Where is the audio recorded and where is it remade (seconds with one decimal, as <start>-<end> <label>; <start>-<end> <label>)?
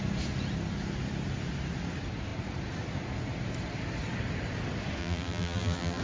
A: 0.0-5.0 recorded; 5.0-6.0 remade